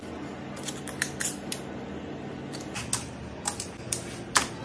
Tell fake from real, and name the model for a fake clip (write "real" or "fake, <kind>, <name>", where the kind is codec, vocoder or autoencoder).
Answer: real